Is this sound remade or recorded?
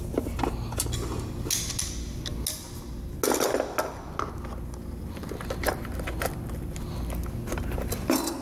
recorded